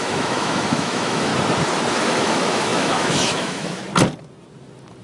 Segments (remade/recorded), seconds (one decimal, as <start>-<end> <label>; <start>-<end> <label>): 0.0-1.3 remade; 1.3-1.9 recorded; 1.9-3.8 remade; 3.8-5.0 recorded